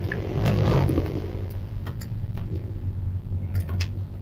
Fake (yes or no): yes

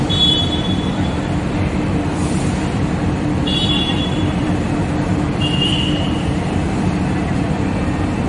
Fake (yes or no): yes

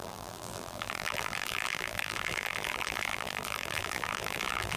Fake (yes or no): yes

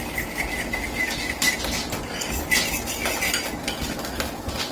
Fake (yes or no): no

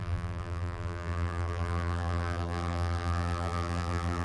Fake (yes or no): yes